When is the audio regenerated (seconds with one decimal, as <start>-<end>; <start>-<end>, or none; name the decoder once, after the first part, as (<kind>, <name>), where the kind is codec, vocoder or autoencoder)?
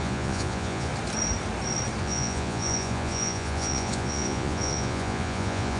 0.0-0.9 (vocoder, Vocos); 2.0-5.8